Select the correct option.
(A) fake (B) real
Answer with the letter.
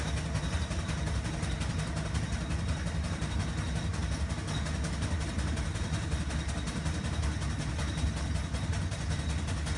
B